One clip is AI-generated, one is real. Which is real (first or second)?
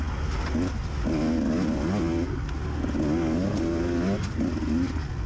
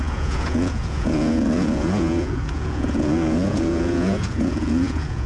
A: first